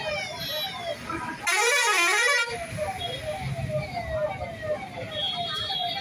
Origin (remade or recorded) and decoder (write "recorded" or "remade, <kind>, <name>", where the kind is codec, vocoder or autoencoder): recorded